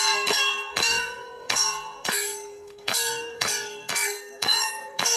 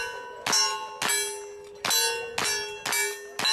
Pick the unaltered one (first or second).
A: second